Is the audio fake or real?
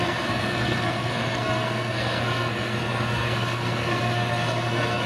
fake